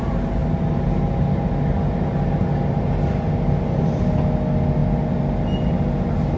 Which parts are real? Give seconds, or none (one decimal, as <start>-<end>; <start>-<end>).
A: 0.0-6.4